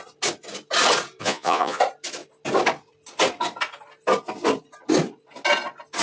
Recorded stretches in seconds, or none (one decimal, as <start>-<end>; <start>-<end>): 0.0-1.2; 1.8-6.0